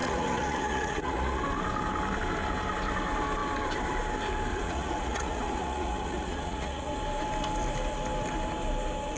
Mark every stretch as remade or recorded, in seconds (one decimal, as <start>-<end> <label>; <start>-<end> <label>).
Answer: 0.0-1.4 remade; 1.4-4.5 recorded; 4.5-6.9 remade; 6.9-9.2 recorded